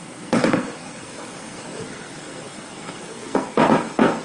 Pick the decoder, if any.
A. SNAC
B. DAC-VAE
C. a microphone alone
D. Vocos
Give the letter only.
A